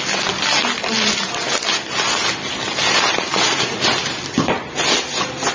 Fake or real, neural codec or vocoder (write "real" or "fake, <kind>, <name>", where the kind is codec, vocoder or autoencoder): real